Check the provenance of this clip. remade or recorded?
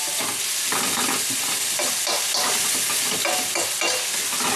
recorded